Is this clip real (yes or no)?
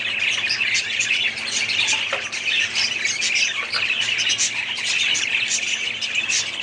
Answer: yes